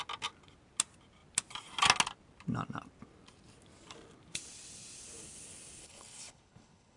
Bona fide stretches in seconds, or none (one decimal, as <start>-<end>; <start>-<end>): 0.0-5.8